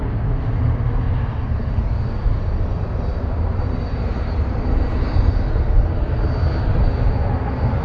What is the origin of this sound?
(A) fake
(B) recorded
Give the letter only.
B